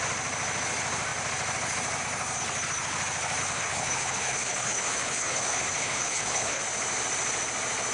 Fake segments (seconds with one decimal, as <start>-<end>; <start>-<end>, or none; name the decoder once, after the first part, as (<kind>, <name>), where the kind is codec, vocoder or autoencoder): 3.4-6.6 (codec, HILCodec)

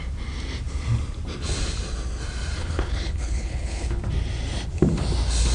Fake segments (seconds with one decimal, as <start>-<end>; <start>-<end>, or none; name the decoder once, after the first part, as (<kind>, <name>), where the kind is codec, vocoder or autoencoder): 2.6-4.0 (codec, HILCodec)

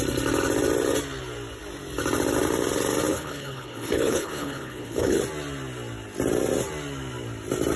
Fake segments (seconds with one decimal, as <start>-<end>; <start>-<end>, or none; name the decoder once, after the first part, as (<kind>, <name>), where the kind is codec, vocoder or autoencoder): 3.1-5.2 (codec, HILCodec)

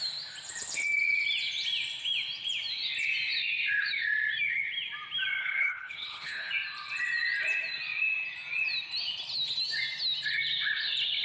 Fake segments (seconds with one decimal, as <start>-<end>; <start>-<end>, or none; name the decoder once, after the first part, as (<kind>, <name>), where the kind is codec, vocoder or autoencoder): 5.4-6.5 (codec, HILCodec)

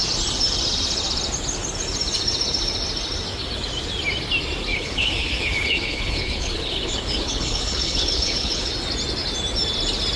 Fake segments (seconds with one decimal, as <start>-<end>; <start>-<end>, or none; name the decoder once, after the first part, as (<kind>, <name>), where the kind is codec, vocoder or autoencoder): 4.7-8.7 (codec, HILCodec)

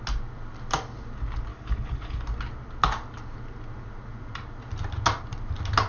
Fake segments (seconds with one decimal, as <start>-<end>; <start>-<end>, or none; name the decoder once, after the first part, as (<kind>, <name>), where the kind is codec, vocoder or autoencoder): 1.5-2.2 (codec, HILCodec)

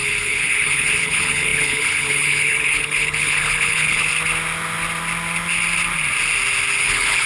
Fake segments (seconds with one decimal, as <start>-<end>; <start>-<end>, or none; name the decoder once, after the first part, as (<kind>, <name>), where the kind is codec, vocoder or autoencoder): 0.0-4.1 (codec, HILCodec); 6.8-7.3

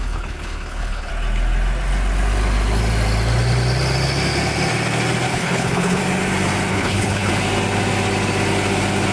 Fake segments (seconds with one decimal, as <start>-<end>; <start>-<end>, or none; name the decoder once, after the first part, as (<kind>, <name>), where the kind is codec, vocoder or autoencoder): 0.0-1.1 (codec, HILCodec); 5.3-6.0; 6.7-7.3